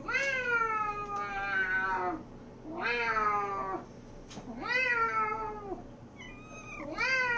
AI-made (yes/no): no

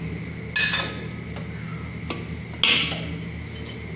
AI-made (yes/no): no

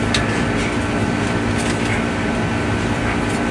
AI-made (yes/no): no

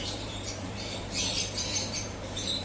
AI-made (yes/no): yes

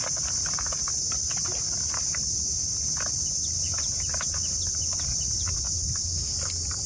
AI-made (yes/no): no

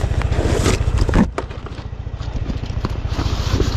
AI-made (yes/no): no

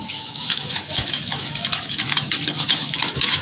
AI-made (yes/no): yes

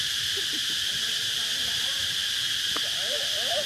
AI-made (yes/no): no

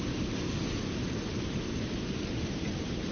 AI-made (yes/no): no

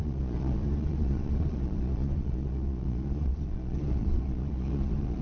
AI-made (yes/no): yes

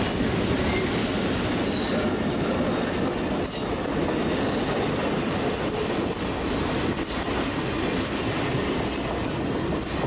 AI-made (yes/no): no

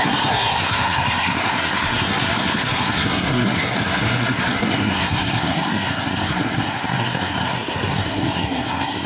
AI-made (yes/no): yes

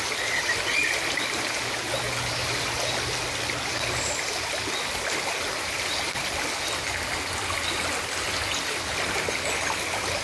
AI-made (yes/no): no